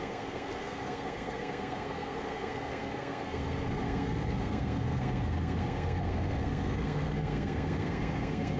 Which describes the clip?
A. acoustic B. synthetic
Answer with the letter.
B